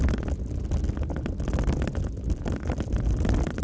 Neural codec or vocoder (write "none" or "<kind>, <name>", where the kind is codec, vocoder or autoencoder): none